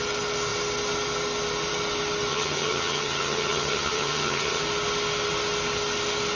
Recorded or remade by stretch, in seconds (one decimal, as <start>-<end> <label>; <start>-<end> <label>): 0.0-2.3 recorded; 2.3-4.6 remade; 4.6-6.4 recorded